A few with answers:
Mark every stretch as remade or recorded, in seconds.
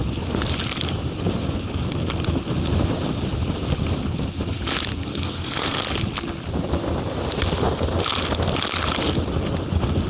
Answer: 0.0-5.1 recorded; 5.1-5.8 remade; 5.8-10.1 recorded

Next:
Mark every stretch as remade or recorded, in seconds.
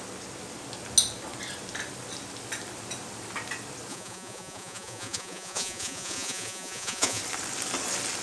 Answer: 0.0-3.9 recorded; 3.9-7.2 remade; 7.2-8.2 recorded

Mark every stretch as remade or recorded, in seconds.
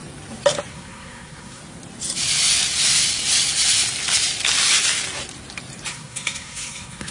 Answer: 0.0-0.7 recorded; 0.7-1.6 remade; 1.6-5.9 recorded; 5.9-7.1 remade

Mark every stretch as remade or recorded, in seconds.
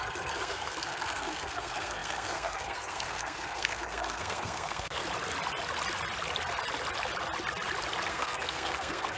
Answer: 0.0-5.0 remade; 5.0-8.1 recorded; 8.1-9.2 remade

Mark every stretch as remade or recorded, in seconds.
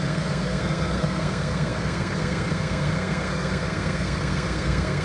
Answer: 0.0-5.0 remade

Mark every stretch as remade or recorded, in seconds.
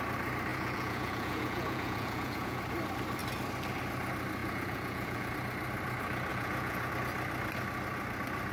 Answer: 0.0-0.5 recorded; 0.5-2.6 remade; 2.6-4.4 recorded; 4.4-5.3 remade; 5.3-6.3 recorded; 6.3-6.9 remade; 6.9-8.5 recorded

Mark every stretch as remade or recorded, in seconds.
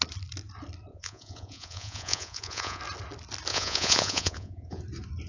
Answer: 0.0-0.9 recorded; 0.9-2.8 remade; 2.8-3.5 recorded; 3.5-4.8 remade; 4.8-5.3 recorded